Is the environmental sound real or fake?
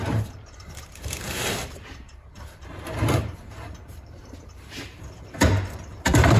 fake